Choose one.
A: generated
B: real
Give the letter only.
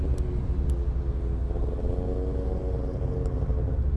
B